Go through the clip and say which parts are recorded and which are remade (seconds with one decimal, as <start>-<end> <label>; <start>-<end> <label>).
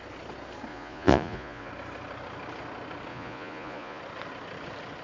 0.0-0.7 recorded; 0.7-1.7 remade; 1.7-3.1 recorded; 3.1-4.0 remade; 4.0-5.0 recorded